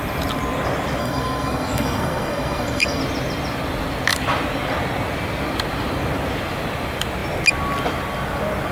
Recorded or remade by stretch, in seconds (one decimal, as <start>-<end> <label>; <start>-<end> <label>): 0.0-1.0 recorded; 1.0-3.0 remade; 3.0-8.7 recorded